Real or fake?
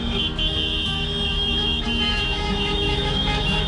fake